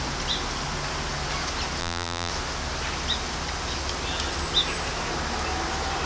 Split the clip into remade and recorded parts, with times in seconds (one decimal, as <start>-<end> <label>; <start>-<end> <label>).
0.0-1.8 recorded; 1.8-2.3 remade; 2.3-6.1 recorded